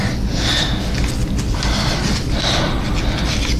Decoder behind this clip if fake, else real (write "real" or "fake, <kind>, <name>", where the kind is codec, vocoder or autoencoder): real